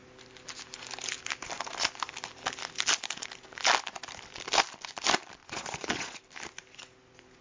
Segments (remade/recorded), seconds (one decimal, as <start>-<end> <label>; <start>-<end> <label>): 0.0-5.4 recorded; 5.4-6.2 remade; 6.2-7.4 recorded